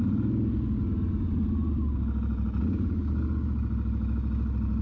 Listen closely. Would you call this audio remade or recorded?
recorded